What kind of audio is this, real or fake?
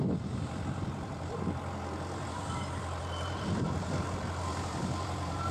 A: fake